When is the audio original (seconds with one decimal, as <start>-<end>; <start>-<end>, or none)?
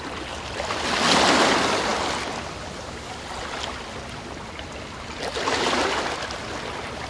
0.0-7.1